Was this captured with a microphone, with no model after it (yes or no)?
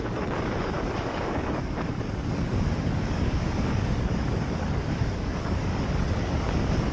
no